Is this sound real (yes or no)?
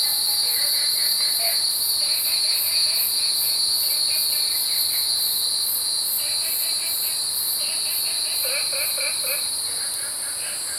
yes